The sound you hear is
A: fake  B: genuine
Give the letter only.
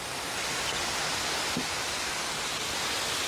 B